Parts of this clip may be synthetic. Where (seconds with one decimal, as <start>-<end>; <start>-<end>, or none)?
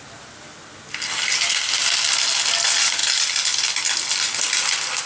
none